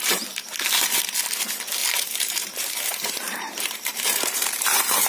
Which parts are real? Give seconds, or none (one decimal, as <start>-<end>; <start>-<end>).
0.0-1.8